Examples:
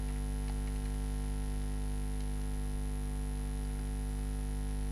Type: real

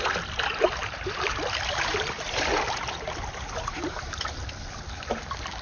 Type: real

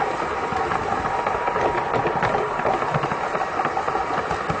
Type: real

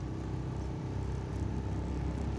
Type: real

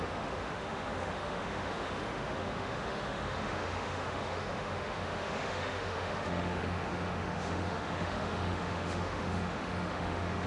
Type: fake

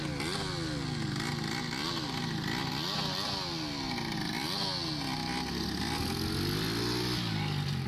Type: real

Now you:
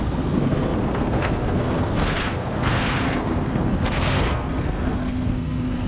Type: fake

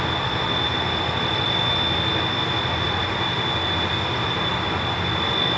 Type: real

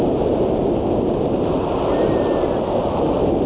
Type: real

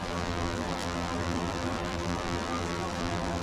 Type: fake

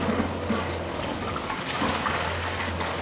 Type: fake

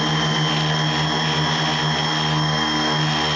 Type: real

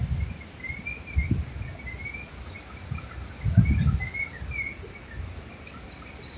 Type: real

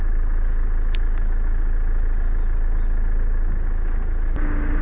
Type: real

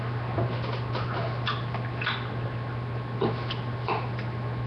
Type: real